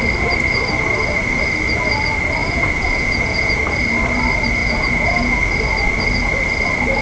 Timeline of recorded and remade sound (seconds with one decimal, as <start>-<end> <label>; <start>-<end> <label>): 0.0-2.4 recorded; 2.4-3.6 remade; 3.6-4.6 recorded; 4.6-5.4 remade; 5.4-7.0 recorded